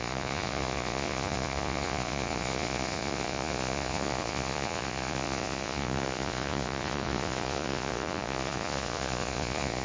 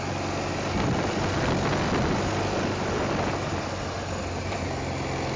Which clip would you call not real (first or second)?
first